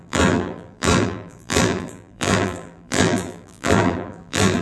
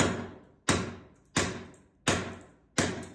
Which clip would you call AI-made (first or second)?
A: first